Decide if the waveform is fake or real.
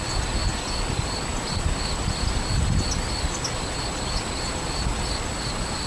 real